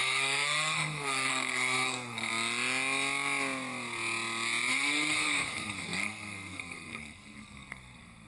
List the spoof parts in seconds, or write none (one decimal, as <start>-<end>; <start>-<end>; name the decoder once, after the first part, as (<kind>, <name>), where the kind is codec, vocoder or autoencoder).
0.0-2.3 (codec, SNAC); 4.7-8.3